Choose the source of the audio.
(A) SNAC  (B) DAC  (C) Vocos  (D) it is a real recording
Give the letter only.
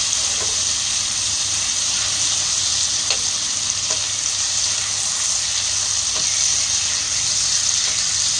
D